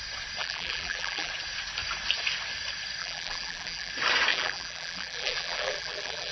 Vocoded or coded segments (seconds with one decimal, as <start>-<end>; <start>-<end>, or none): 0.4-1.3; 3.0-3.9; 4.3-6.3

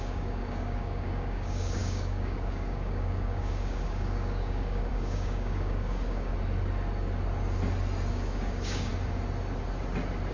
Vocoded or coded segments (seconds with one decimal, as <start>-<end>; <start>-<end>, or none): 0.0-6.3; 8.1-8.9

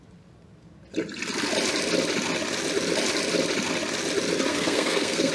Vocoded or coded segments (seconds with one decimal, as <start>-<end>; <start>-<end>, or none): 4.5-5.3

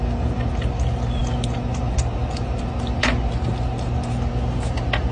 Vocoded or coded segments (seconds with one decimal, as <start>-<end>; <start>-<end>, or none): none